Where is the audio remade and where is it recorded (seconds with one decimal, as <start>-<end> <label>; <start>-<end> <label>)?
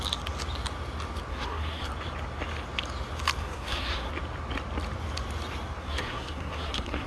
0.0-1.3 recorded; 1.3-1.9 remade; 1.9-3.4 recorded; 3.4-4.1 remade; 4.1-5.8 recorded; 5.8-7.1 remade